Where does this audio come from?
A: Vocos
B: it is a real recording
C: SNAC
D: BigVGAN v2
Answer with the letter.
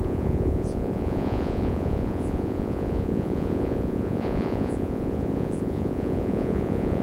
A